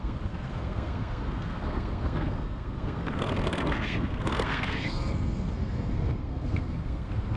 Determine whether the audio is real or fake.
fake